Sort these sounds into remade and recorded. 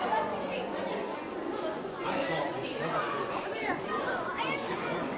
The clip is remade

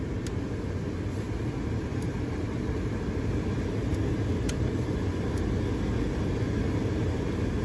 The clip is recorded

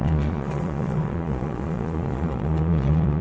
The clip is remade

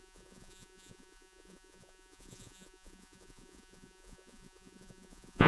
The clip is remade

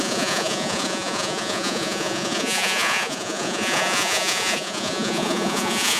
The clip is remade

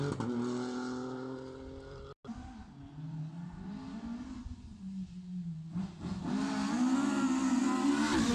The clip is recorded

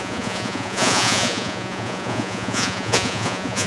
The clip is remade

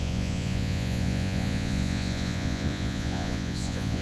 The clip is remade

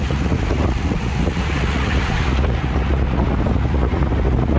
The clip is remade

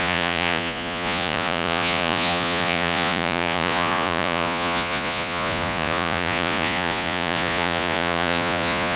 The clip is remade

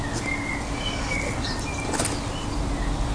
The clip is recorded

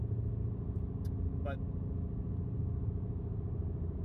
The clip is recorded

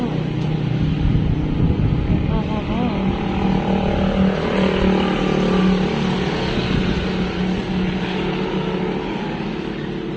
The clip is recorded